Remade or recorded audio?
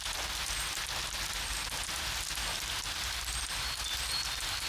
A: recorded